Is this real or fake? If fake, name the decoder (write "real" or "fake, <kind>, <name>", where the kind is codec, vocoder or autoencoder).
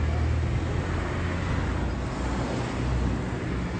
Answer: real